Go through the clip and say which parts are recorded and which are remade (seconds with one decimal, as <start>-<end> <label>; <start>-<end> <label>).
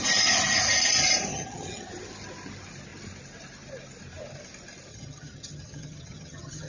0.0-1.3 recorded; 1.3-1.9 remade; 1.9-4.9 recorded; 4.9-6.7 remade